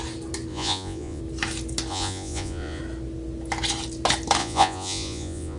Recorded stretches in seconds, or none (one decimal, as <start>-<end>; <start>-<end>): 0.0-0.5; 1.2-1.9; 2.8-4.4